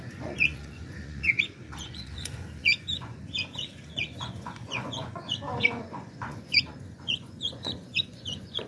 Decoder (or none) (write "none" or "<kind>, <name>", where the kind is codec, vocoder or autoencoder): vocoder, Vocos